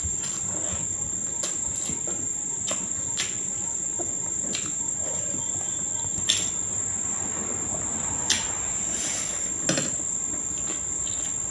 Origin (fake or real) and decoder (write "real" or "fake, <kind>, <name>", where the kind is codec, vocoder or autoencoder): real